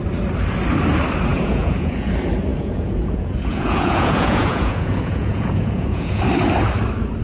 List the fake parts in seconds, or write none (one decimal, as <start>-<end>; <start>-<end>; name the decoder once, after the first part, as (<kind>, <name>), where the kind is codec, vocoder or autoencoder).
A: 1.3-2.1 (vocoder, Vocos); 2.5-6.2